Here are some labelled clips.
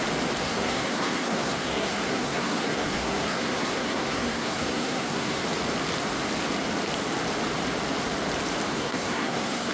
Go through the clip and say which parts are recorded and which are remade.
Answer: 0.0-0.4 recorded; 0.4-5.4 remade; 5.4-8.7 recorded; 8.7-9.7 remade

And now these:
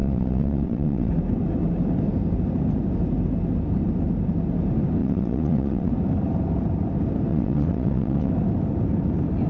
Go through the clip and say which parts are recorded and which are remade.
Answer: 0.0-1.1 remade; 1.1-5.0 recorded; 5.0-5.9 remade; 5.9-7.3 recorded; 7.3-8.3 remade; 8.3-9.5 recorded

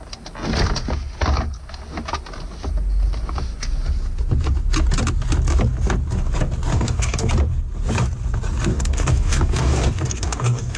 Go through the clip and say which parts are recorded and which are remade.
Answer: 0.0-6.7 recorded; 6.7-7.3 remade; 7.3-8.7 recorded; 8.7-10.8 remade

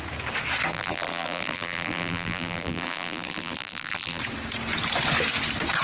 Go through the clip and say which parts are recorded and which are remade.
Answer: 0.0-0.7 recorded; 0.7-4.2 remade; 4.2-5.8 recorded

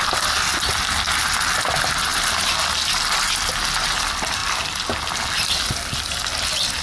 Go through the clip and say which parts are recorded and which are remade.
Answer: 0.0-6.8 recorded

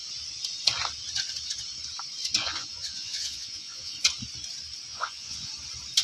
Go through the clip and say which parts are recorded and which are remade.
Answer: 0.0-2.4 recorded; 2.4-3.9 remade; 3.9-4.9 recorded; 4.9-5.5 remade; 5.5-6.0 recorded